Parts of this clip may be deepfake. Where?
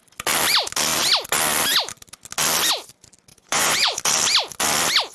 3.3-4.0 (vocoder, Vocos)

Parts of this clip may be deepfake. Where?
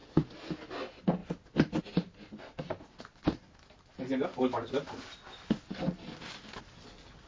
none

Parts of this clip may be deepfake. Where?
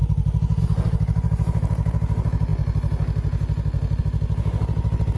none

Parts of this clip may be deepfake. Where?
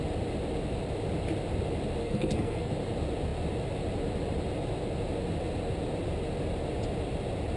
2.0-2.7 (codec, SNAC)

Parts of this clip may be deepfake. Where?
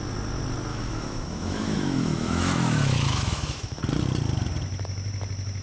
0.7-3.8 (autoencoder, DAC-VAE)